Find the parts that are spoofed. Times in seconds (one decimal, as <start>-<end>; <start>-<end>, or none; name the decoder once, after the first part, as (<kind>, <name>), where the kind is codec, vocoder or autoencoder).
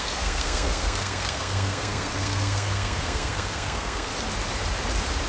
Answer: 0.0-4.1 (codec, SNAC)